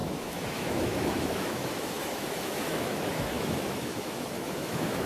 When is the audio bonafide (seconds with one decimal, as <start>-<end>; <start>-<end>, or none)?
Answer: none